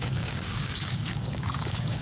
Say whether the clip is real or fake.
fake